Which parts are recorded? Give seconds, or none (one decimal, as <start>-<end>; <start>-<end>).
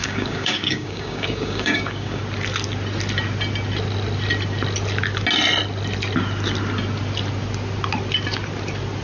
2.2-9.0